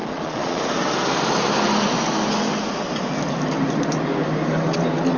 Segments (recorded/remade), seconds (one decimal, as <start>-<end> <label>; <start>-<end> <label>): 0.0-0.6 remade; 0.6-5.2 recorded